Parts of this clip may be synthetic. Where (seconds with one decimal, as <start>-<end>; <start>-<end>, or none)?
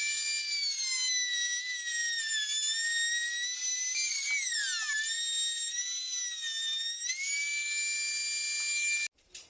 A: none